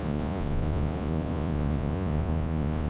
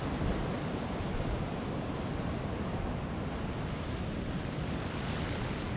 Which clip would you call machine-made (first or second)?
first